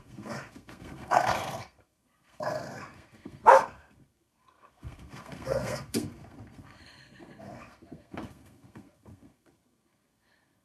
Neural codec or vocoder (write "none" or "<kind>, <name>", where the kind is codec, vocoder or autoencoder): codec, SNAC